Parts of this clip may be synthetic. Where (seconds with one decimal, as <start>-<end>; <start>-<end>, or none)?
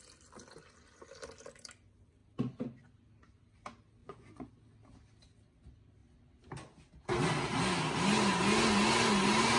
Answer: 4.0-4.5